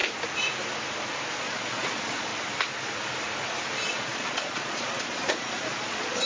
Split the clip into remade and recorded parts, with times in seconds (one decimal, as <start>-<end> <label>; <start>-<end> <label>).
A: 0.0-1.3 recorded; 1.3-2.3 remade; 2.3-3.9 recorded; 3.9-6.3 remade